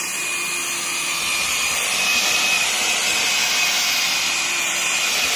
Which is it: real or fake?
real